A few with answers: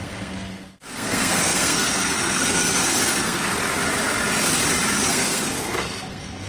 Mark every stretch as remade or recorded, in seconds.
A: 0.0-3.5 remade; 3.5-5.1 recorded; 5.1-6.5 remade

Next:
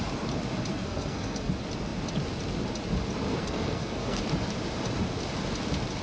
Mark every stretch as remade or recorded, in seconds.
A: 0.0-0.7 recorded; 0.7-1.5 remade; 1.5-3.3 recorded; 3.3-4.2 remade; 4.2-6.0 recorded

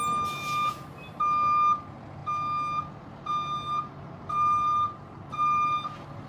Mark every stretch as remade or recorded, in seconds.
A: 0.0-6.3 recorded

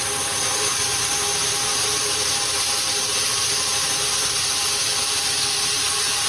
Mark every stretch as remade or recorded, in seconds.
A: 0.0-6.3 recorded

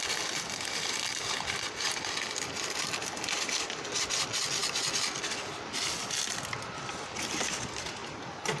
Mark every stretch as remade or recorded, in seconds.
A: 0.0-8.6 recorded

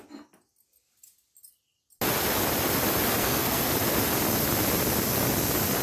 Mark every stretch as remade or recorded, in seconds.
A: 0.0-3.2 recorded; 3.2-3.7 remade; 3.7-5.8 recorded

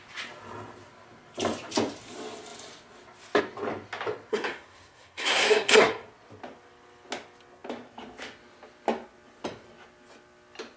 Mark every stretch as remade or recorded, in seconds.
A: 0.0-4.3 recorded; 4.3-5.9 remade; 5.9-10.8 recorded

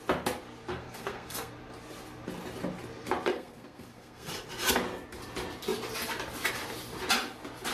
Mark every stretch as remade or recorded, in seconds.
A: 0.0-0.7 recorded; 0.7-1.5 remade; 1.5-3.3 recorded; 3.3-4.3 remade; 4.3-7.7 recorded